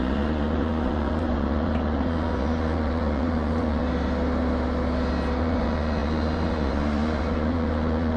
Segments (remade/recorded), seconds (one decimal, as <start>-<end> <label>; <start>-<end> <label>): 0.0-3.8 remade; 3.8-5.4 recorded; 5.4-8.2 remade